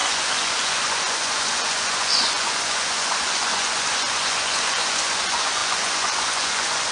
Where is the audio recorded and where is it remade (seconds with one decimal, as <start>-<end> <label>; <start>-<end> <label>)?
0.0-6.9 remade